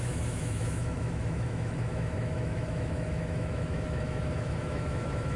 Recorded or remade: remade